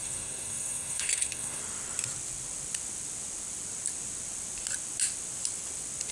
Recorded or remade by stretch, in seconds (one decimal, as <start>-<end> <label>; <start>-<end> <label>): 0.0-1.6 remade; 1.6-6.1 recorded